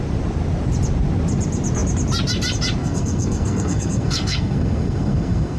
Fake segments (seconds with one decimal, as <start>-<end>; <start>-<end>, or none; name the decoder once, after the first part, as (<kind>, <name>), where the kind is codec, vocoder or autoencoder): 2.8-5.6 (codec, SNAC)

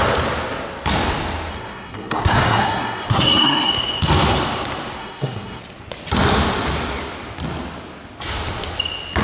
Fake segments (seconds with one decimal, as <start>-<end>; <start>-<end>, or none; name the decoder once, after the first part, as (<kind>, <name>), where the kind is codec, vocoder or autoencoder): 1.5-3.7 (codec, SNAC); 5.0-5.6

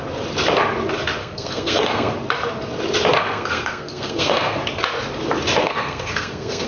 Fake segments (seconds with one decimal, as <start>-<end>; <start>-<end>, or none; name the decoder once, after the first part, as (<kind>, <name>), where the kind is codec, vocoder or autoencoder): 1.2-2.1 (codec, SNAC); 3.2-4.6; 5.6-6.7